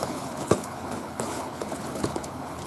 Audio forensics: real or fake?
fake